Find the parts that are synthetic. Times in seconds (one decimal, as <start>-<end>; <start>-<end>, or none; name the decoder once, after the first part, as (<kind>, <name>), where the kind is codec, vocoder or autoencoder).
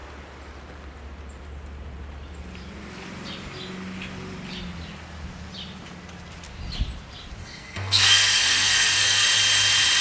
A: 7.4-9.3 (codec, SNAC)